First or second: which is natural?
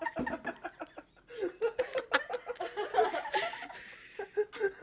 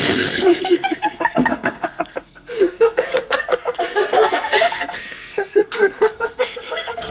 first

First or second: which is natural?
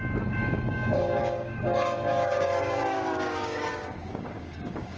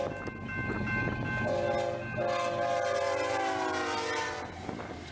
second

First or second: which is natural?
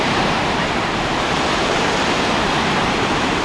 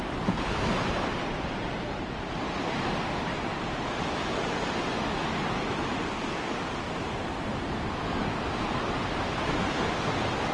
second